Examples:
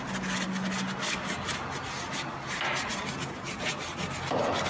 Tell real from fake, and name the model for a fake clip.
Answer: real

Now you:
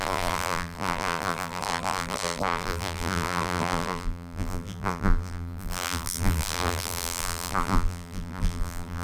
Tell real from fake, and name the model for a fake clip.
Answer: fake, vocoder, BigVGAN v2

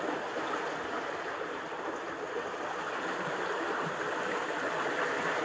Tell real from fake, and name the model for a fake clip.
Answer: real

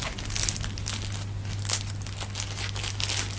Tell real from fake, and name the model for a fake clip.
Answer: real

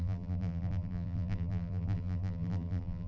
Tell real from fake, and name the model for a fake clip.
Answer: fake, vocoder, BigVGAN v2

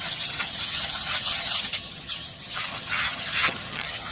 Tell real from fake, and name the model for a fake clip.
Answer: fake, vocoder, HiFi-GAN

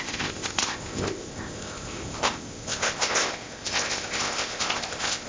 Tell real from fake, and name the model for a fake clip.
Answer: fake, codec, ZipCodec